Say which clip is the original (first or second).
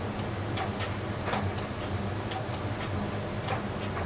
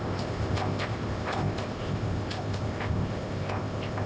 first